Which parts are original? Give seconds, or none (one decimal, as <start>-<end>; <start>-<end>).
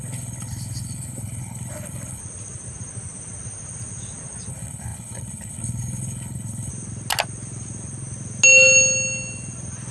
2.2-4.5; 6.7-9.9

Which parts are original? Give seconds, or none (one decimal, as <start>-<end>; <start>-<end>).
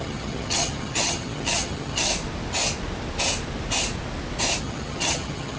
2.1-4.6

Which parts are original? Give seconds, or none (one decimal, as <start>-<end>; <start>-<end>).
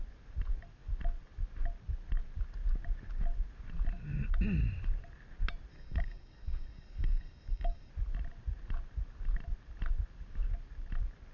0.0-5.7; 7.9-11.3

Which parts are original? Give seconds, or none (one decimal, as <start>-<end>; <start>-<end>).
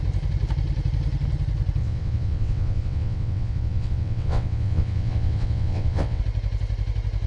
0.0-1.8; 6.2-7.3